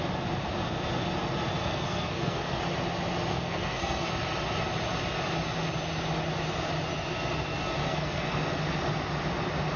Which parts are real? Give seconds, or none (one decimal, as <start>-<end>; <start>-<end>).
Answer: 0.0-1.6; 2.6-3.3; 4.1-7.8; 8.6-9.8